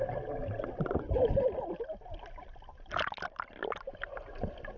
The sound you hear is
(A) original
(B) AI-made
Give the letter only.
A